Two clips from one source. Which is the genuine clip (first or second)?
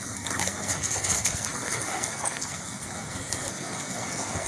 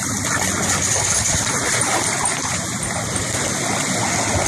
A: second